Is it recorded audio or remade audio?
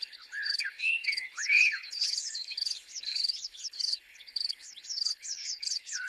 remade